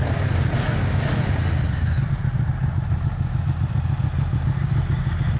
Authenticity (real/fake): real